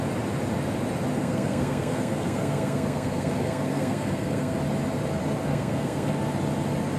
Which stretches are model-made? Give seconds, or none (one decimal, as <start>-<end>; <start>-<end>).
1.2-4.6; 5.4-6.1